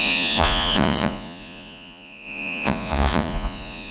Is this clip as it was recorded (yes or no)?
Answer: no